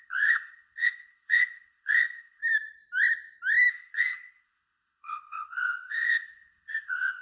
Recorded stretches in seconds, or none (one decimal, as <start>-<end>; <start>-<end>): 2.4-3.7